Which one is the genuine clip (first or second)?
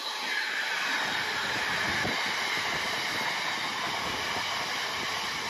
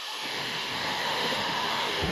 first